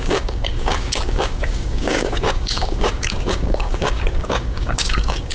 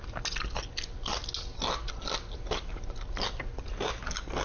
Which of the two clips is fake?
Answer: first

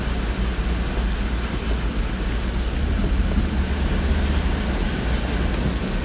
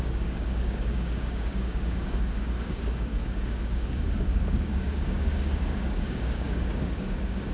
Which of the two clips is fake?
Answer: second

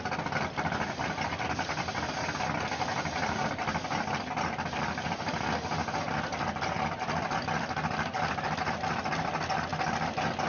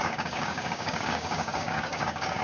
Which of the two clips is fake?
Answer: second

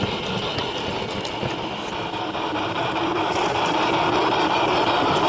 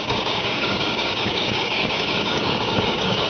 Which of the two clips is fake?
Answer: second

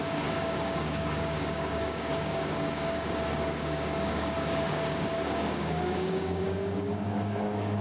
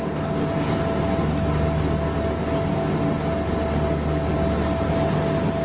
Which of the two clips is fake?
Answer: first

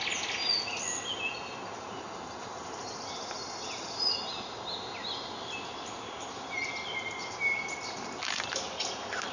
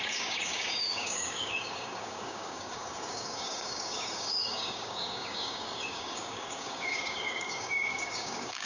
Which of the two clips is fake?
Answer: second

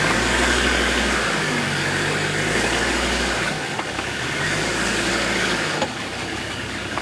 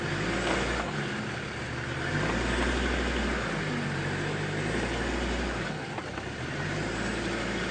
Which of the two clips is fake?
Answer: first